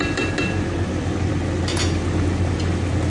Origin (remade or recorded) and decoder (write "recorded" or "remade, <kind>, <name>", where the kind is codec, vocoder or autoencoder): recorded